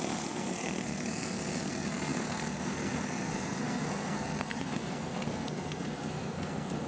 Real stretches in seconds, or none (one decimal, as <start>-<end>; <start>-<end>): none